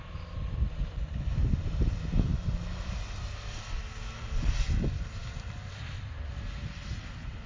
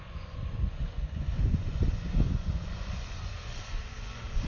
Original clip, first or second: first